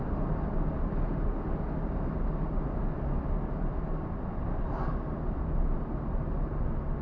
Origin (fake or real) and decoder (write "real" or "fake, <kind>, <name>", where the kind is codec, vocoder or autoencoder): real